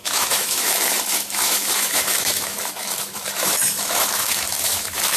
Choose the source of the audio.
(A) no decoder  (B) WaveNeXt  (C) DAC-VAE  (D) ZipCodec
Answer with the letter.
C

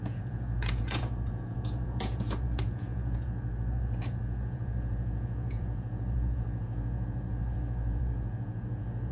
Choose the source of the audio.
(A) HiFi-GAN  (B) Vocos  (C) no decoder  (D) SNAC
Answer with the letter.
B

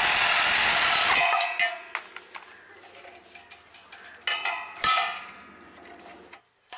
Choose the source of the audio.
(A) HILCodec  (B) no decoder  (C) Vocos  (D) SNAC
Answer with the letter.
B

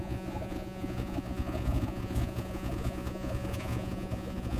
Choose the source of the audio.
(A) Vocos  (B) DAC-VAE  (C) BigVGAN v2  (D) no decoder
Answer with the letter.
A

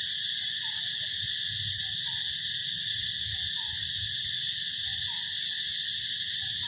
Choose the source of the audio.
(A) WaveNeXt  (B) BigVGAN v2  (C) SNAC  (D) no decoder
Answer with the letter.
D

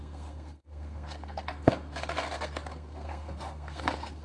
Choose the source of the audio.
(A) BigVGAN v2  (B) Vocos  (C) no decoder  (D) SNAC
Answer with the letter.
D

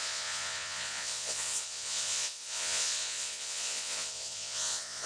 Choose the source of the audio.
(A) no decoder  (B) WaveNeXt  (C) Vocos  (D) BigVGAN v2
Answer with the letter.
C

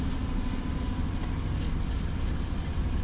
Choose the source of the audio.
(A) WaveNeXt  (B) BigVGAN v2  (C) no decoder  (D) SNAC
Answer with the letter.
C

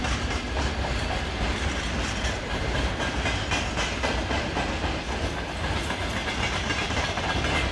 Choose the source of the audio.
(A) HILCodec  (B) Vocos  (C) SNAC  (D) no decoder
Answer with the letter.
D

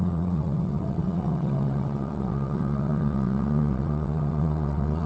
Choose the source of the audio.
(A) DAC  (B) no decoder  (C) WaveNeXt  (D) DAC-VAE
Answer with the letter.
C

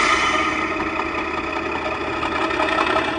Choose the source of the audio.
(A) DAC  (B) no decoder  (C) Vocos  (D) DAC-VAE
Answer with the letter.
B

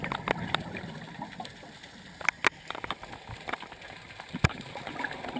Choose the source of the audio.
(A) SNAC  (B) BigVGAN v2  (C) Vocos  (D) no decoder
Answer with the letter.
B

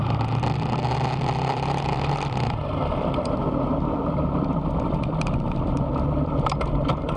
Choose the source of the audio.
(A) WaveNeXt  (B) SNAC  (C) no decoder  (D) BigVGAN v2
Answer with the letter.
D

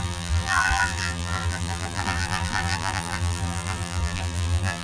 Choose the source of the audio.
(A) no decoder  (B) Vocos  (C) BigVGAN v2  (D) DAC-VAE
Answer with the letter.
C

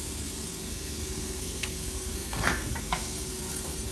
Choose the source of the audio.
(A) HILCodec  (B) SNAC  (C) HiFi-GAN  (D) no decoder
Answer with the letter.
B